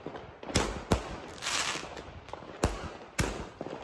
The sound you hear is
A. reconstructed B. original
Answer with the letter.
B